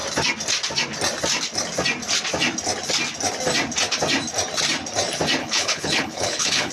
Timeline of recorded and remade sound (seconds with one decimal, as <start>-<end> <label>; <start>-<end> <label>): 0.0-5.4 recorded; 5.4-6.7 remade